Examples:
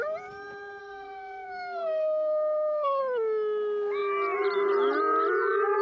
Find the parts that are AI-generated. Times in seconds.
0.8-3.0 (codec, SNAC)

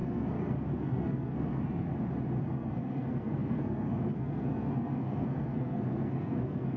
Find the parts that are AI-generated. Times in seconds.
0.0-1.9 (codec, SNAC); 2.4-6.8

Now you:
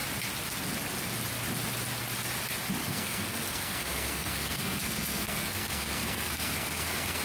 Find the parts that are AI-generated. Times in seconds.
2.8-7.2 (codec, SNAC)

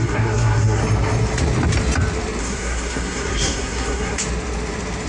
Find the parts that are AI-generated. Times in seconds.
0.0-0.8 (codec, SNAC); 2.4-4.2

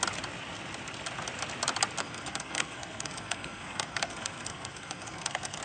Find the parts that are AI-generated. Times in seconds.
2.0-5.6 (codec, SNAC)

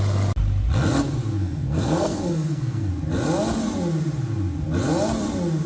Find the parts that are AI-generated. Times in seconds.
1.4-2.9 (codec, SNAC)

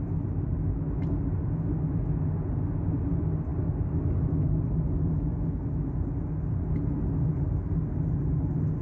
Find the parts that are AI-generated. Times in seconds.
none